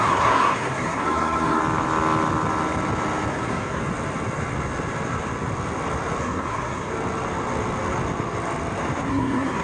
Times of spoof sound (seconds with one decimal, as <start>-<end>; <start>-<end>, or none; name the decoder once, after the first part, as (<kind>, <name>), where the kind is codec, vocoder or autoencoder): 0.0-1.6 (codec, SNAC); 3.3-3.8; 6.2-6.9; 9.1-9.6

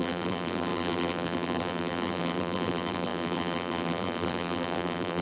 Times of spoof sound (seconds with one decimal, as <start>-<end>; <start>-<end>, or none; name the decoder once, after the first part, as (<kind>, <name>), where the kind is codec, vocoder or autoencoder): 0.0-5.2 (vocoder, BigVGAN v2)